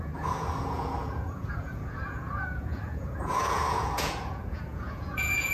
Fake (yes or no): yes